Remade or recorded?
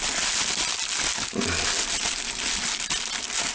recorded